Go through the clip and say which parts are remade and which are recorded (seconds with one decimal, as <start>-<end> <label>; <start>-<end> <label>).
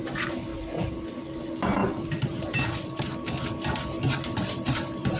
0.0-0.5 remade; 0.5-1.2 recorded; 1.2-5.2 remade